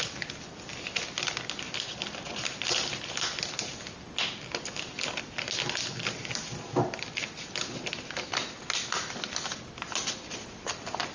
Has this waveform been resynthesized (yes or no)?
no